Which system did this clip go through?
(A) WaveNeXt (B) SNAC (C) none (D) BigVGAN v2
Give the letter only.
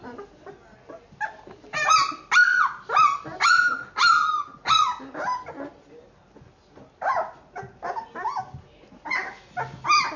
C